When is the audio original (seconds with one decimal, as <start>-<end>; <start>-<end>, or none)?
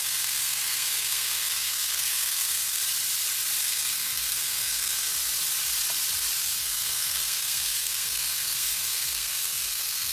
2.8-3.6; 5.1-6.4